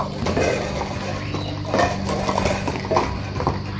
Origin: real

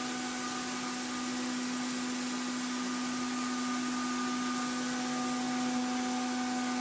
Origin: real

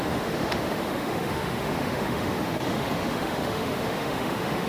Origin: fake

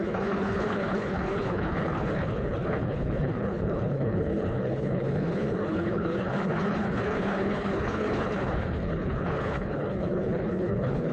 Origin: fake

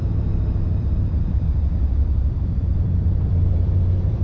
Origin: fake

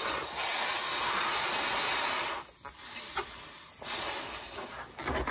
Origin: real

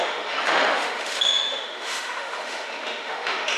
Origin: fake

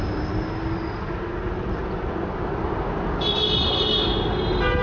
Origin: real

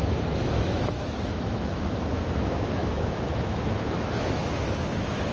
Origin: fake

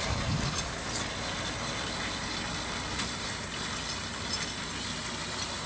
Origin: real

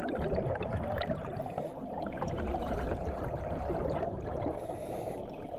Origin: fake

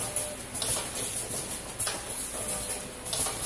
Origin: real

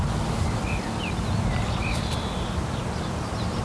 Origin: real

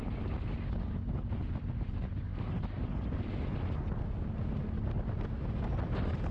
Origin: real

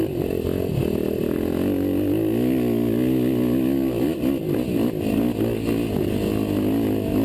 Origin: real